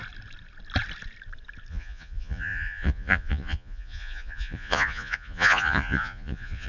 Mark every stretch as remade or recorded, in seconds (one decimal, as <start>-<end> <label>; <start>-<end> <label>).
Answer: 0.0-1.7 recorded; 1.7-6.7 remade

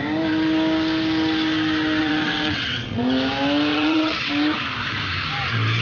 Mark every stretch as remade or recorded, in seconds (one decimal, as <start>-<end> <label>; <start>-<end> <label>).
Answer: 0.0-2.0 recorded; 2.0-3.0 remade; 3.0-3.7 recorded; 3.7-4.3 remade; 4.3-5.8 recorded

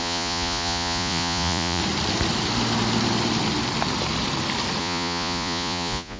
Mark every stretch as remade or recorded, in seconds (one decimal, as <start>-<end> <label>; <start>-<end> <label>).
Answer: 0.0-1.8 remade; 1.8-4.8 recorded; 4.8-6.2 remade

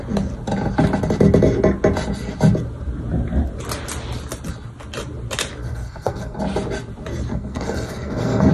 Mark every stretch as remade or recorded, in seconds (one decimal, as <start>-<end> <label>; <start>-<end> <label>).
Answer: 0.0-5.6 recorded; 5.6-6.4 remade; 6.4-7.3 recorded; 7.3-8.5 remade

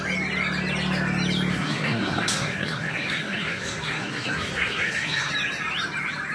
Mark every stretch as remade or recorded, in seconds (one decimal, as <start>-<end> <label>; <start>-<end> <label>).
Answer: 0.0-1.5 recorded; 1.5-5.3 remade; 5.3-6.3 recorded

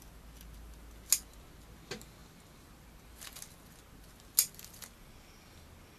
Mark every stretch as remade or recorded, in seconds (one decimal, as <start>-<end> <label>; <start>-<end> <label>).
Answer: 0.0-6.0 recorded

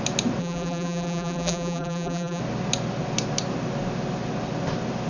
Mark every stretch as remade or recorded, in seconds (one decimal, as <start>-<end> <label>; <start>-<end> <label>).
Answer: 0.0-0.4 recorded; 0.4-2.4 remade; 2.4-5.1 recorded